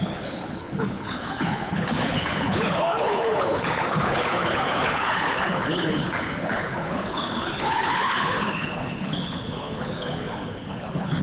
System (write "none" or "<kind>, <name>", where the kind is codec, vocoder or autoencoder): codec, HILCodec